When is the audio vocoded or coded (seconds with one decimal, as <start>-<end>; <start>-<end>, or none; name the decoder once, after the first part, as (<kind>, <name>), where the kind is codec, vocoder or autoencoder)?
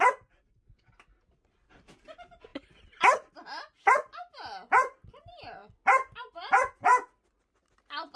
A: 2.5-3.6 (vocoder, BigVGAN v2)